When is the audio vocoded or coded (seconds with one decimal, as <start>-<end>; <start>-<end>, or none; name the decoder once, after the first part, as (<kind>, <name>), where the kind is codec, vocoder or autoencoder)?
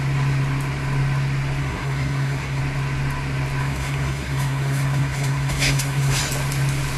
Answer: 1.6-2.6 (codec, SNAC); 3.6-6.2